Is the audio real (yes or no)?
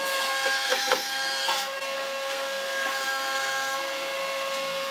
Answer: no